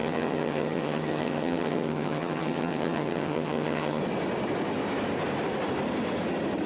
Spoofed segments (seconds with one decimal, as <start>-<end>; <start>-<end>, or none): 0.0-4.0